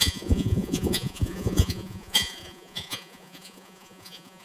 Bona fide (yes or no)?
no